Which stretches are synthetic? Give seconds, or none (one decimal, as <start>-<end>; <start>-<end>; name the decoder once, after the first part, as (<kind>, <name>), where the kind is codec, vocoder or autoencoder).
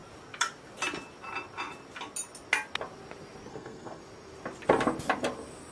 3.5-4.0 (codec, SNAC)